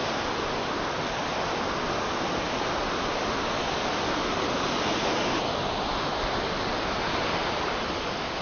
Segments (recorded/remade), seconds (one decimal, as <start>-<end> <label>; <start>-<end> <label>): 0.0-8.4 recorded